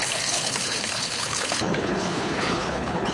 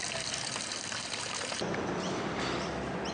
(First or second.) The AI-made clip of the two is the first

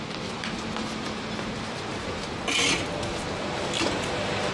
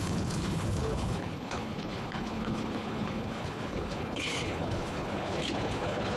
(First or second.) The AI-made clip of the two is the second